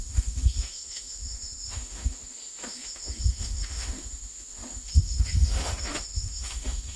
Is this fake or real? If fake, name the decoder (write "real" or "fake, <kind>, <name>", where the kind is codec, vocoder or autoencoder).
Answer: fake, autoencoder, DAC-VAE